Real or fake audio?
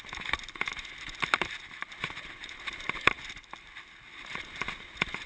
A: real